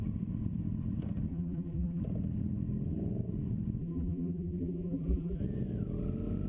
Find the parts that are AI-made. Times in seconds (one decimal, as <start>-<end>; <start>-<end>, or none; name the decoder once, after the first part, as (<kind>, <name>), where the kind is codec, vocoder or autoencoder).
1.3-2.0 (vocoder, BigVGAN v2); 3.8-5.4